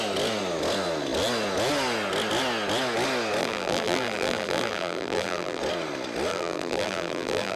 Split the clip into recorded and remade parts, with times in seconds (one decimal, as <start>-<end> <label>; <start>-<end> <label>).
0.0-3.4 recorded; 3.4-5.6 remade; 5.6-6.3 recorded; 6.3-7.6 remade